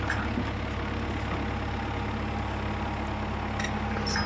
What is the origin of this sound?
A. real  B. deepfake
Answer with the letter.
A